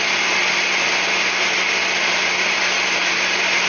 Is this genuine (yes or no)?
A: no